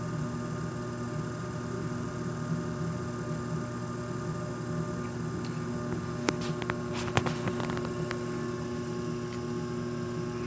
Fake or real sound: real